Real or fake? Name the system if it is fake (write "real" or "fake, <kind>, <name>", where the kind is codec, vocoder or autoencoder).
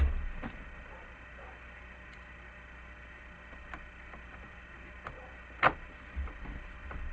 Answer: real